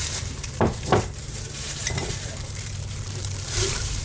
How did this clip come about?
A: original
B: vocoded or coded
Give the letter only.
B